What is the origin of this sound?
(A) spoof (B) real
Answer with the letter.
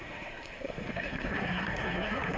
A